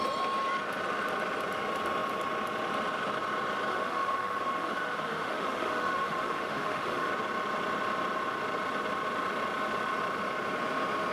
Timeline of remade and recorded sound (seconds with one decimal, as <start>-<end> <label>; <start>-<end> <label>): 0.0-3.7 recorded; 3.7-7.1 remade; 7.1-11.1 recorded